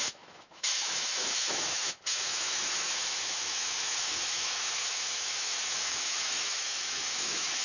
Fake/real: fake